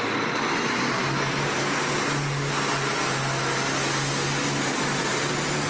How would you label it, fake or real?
real